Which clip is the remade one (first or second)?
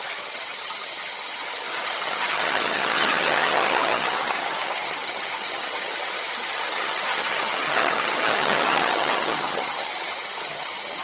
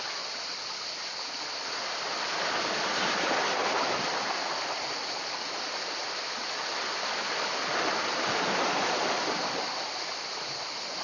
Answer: first